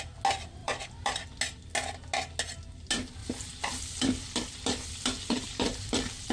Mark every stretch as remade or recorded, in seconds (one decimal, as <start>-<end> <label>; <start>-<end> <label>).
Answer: 0.0-0.6 recorded; 0.6-1.4 remade; 1.4-3.2 recorded; 3.2-6.3 remade